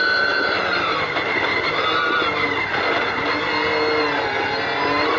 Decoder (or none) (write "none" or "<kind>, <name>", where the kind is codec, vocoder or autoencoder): none